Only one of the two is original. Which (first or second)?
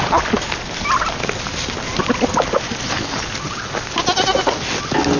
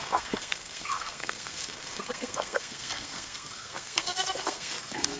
first